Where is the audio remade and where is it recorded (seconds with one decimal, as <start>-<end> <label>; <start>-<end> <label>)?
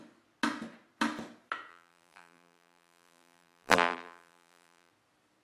0.0-1.7 recorded; 1.7-4.9 remade; 4.9-5.4 recorded